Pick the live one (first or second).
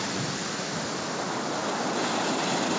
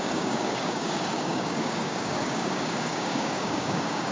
first